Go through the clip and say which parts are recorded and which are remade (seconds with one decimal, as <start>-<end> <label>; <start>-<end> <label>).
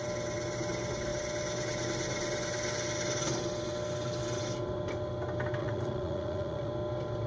0.0-5.6 recorded; 5.6-6.7 remade; 6.7-7.3 recorded